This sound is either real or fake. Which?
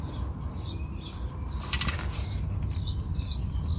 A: real